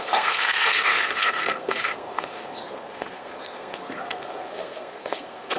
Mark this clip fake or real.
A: fake